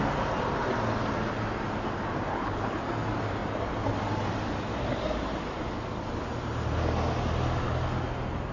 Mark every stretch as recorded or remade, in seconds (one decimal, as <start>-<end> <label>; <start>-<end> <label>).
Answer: 0.0-2.3 recorded; 2.3-2.8 remade; 2.8-8.5 recorded